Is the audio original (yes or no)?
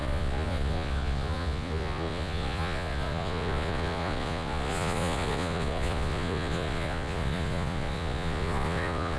no